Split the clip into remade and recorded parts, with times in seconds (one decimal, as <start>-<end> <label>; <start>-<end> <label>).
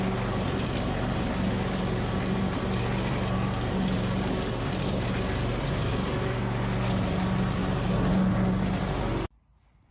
0.0-9.9 recorded